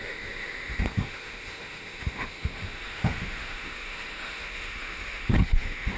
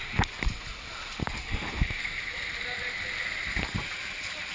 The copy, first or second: first